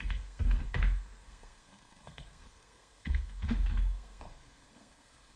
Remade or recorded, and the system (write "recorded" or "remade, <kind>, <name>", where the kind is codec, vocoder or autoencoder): remade, codec, SNAC